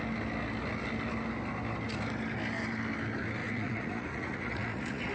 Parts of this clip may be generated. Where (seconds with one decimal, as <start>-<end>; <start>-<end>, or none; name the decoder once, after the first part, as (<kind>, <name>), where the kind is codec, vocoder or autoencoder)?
3.4-5.1 (vocoder, Vocos)